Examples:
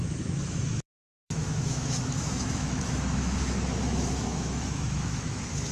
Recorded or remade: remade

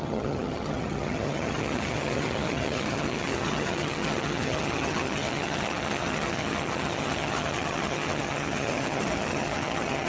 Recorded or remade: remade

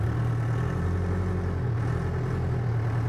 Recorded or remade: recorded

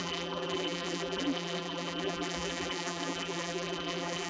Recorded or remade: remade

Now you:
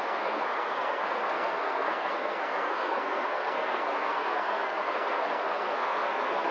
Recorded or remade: remade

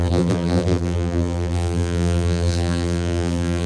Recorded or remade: remade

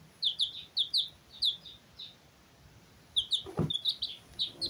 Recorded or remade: recorded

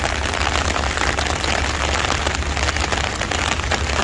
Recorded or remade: recorded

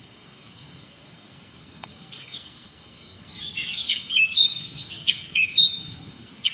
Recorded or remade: remade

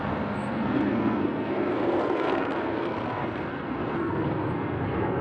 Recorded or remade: remade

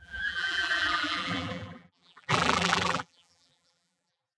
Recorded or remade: remade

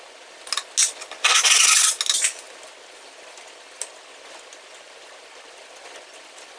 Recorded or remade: recorded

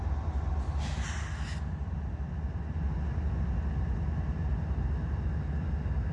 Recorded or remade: recorded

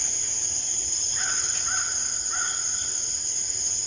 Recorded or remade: remade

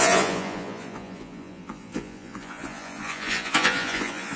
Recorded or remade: remade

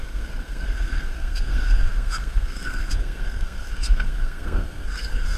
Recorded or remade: remade